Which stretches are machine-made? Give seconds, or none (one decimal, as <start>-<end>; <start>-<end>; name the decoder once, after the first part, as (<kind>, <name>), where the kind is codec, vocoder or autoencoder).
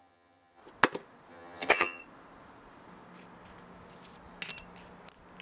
0.0-0.6 (vocoder, HiFi-GAN); 1.3-2.0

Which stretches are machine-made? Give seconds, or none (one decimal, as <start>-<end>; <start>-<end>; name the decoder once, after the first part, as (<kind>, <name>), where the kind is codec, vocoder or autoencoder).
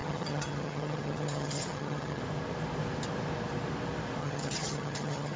0.0-2.2 (vocoder, HiFi-GAN); 4.2-5.4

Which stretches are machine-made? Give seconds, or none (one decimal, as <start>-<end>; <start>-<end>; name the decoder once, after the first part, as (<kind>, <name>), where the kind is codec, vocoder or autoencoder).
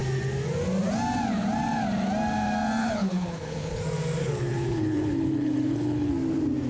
2.8-3.8 (codec, HILCodec); 4.2-6.1